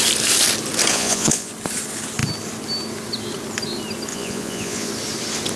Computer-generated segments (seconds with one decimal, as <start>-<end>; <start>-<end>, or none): 0.9-1.5; 4.1-4.9